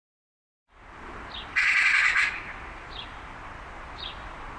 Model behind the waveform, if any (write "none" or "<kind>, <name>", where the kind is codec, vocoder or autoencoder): vocoder, BigVGAN v2